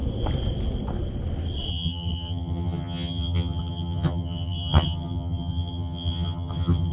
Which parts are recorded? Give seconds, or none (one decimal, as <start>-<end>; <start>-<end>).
0.0-1.7